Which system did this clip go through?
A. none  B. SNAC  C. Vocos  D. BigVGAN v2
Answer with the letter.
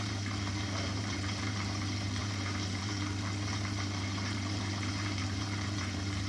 D